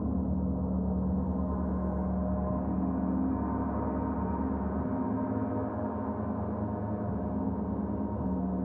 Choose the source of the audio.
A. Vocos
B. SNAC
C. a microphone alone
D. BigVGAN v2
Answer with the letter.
C